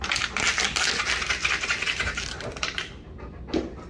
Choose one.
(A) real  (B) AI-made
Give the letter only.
A